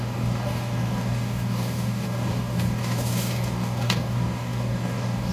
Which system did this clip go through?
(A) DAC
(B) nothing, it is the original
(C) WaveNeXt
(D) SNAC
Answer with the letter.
A